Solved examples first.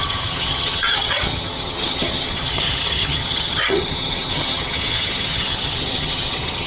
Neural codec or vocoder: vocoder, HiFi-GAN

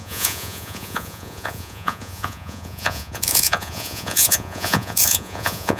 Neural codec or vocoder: vocoder, Vocos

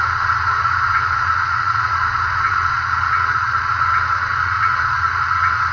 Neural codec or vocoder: vocoder, Vocos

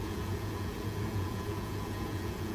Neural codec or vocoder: vocoder, Vocos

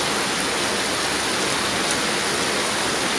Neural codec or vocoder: none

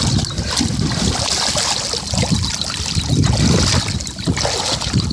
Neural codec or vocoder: none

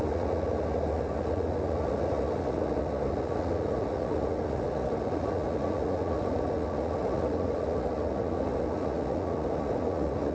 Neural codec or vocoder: vocoder, Vocos